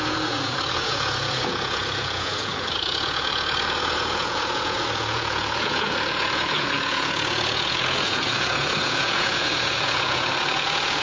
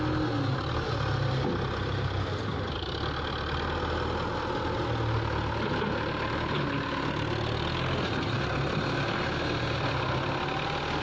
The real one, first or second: second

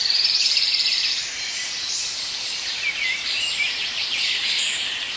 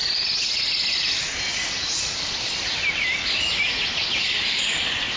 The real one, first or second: second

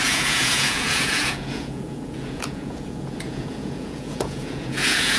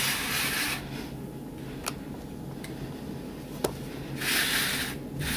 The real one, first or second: second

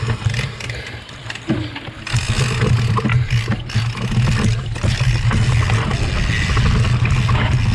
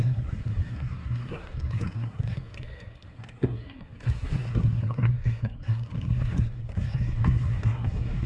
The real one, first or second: first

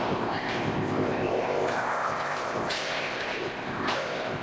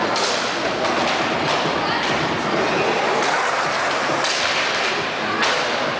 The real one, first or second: second